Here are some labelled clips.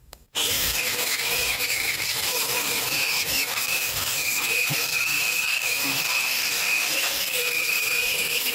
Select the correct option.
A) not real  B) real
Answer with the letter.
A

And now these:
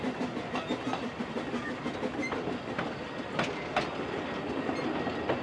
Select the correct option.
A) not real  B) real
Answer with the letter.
B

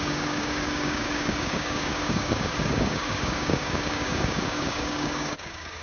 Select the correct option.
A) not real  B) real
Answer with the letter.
A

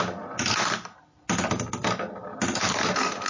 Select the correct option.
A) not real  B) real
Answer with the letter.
B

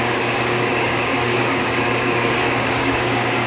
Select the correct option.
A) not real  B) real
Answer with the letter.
A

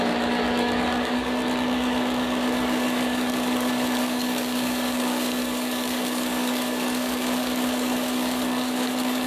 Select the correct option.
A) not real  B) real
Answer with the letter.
A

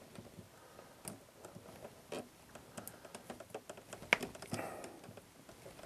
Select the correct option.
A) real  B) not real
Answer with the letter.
A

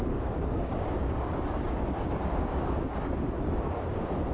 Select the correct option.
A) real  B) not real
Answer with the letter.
B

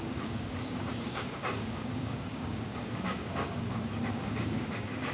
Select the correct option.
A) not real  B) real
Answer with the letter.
A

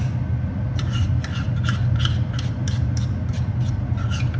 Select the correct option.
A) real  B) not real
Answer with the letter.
A